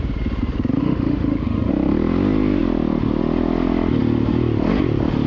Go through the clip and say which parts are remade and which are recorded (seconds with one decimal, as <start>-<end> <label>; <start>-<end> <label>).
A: 0.0-0.8 recorded; 0.8-1.7 remade; 1.7-5.3 recorded